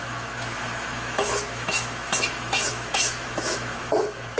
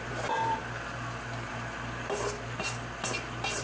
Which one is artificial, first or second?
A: first